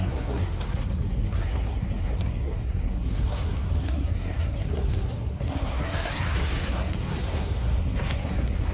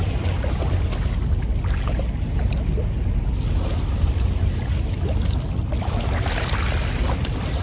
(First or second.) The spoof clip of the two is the first